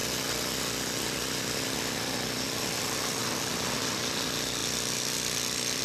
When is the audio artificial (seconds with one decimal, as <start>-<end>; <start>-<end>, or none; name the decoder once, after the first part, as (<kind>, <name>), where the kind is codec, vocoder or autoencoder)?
none